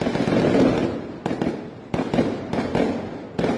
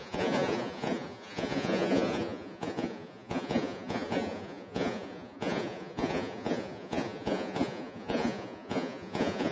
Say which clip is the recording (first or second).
first